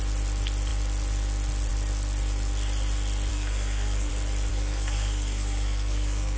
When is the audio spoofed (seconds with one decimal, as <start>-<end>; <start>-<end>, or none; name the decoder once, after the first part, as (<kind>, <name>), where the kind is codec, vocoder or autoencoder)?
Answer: 3.3-4.1 (codec, SNAC); 4.5-6.4